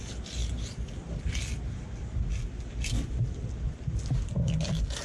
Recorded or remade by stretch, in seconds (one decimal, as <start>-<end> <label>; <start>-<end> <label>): 0.0-5.0 recorded